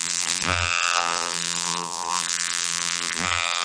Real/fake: fake